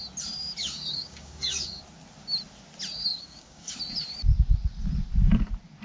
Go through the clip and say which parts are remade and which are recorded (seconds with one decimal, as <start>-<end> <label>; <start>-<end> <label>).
0.0-0.6 recorded; 0.6-1.8 remade; 1.8-3.1 recorded; 3.1-3.8 remade; 3.8-5.8 recorded